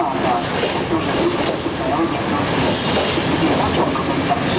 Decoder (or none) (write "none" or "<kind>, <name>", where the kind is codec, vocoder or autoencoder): none